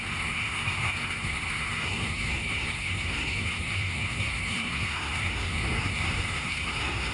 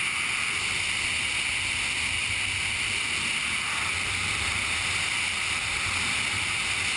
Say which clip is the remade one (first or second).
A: first